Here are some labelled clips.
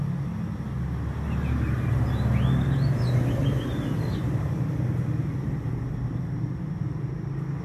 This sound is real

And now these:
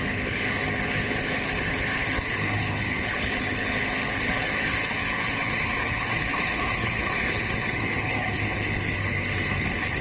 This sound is fake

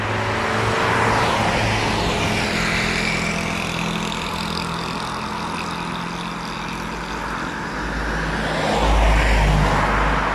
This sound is real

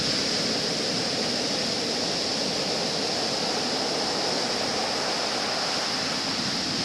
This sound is real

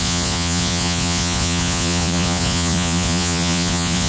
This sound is fake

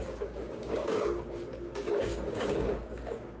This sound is fake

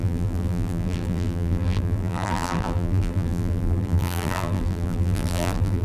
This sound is fake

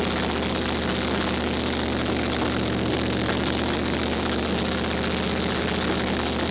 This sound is real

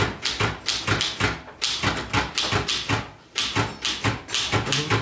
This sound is real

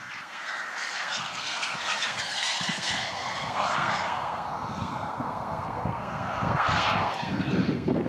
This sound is fake